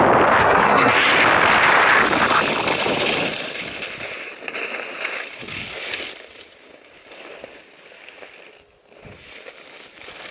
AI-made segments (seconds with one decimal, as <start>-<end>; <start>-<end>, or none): 0.4-1.1